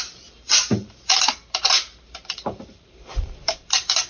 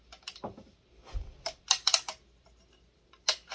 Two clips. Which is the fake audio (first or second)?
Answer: first